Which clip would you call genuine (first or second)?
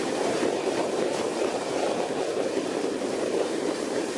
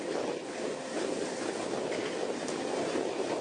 second